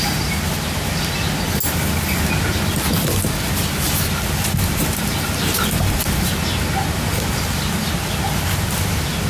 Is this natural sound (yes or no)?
yes